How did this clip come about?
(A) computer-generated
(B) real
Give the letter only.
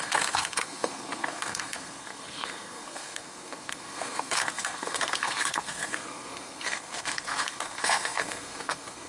A